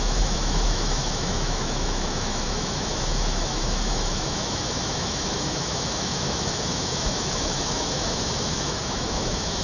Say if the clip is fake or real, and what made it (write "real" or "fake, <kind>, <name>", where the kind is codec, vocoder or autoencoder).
fake, autoencoder, DAC-VAE